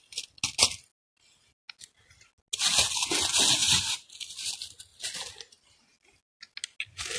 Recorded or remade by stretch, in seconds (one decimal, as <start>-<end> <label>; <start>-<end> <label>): 0.0-3.6 recorded; 3.6-4.1 remade; 4.1-7.2 recorded